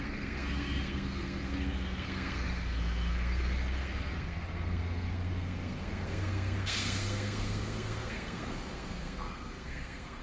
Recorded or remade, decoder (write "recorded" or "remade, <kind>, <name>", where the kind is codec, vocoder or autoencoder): remade, codec, SNAC